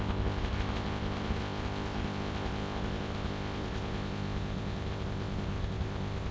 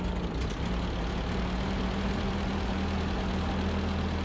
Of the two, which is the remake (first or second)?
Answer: first